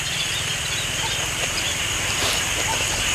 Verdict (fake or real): real